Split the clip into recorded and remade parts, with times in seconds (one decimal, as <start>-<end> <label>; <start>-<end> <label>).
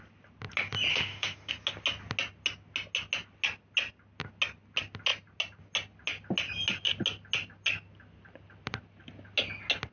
0.0-0.9 recorded; 0.9-1.5 remade; 1.5-9.9 recorded